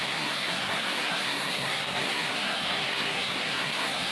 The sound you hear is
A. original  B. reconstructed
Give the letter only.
B